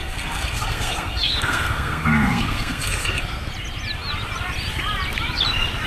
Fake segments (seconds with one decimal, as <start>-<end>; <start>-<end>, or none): 0.0-3.5